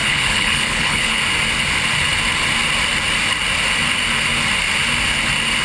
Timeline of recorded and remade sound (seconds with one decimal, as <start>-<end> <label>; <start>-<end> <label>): 0.0-1.2 remade; 1.2-5.6 recorded